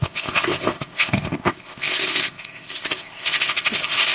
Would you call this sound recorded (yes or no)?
no